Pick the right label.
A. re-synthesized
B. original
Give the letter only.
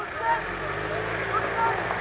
B